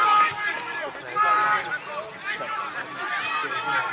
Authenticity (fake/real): real